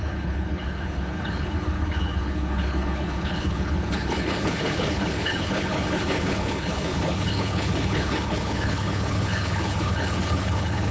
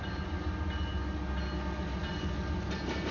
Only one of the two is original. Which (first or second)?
second